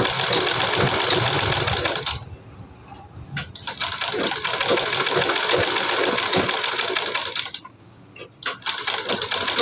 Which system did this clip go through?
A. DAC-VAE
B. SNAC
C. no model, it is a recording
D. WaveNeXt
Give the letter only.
C